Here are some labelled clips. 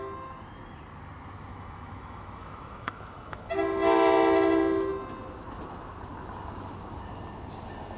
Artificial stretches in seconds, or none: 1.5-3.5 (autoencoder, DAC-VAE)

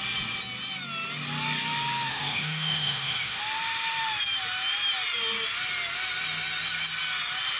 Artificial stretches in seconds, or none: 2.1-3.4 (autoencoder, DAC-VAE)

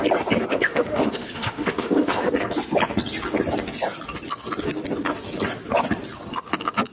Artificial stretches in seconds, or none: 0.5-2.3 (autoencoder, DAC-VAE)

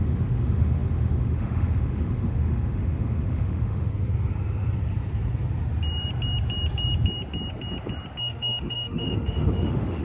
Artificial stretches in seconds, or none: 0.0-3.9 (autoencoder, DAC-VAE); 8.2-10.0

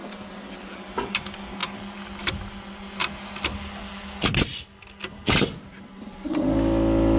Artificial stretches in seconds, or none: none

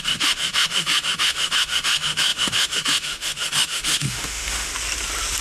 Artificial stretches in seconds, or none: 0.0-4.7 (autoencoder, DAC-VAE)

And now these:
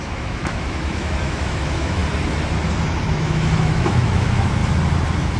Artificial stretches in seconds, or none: 0.0-2.0 (autoencoder, DAC-VAE); 3.0-4.6